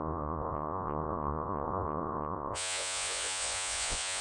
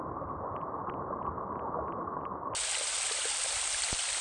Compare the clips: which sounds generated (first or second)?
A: first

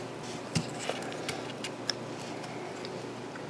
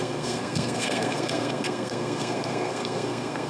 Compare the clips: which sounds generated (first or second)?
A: second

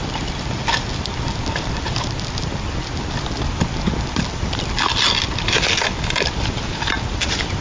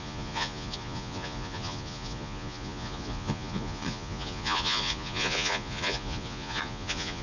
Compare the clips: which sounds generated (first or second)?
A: second